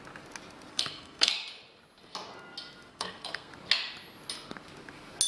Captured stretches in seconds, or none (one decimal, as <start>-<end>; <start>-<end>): 0.0-0.7; 1.3-2.9; 3.5-5.3